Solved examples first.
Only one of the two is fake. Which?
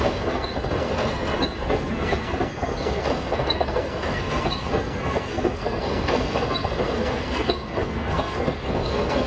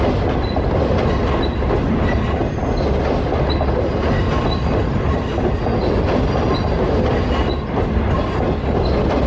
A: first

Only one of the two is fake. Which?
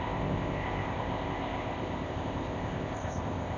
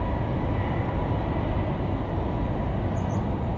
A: first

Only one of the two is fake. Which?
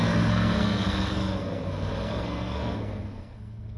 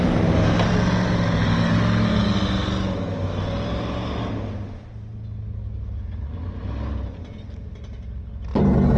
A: first